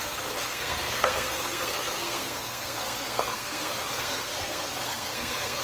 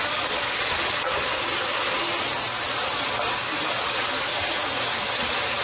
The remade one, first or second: first